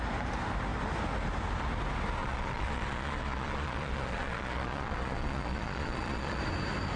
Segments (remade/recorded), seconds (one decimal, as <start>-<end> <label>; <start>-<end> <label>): 0.0-2.2 recorded; 2.2-6.4 remade; 6.4-7.0 recorded